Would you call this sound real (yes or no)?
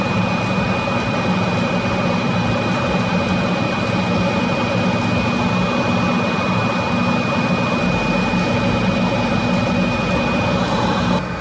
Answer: yes